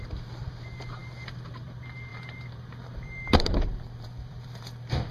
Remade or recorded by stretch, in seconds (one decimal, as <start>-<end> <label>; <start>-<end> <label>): 0.0-5.1 remade